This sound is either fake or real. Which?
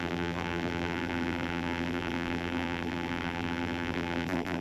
fake